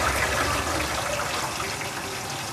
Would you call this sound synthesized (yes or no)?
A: no